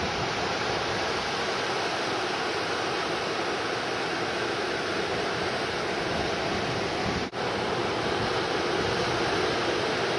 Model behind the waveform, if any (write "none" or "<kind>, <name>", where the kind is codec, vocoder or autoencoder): none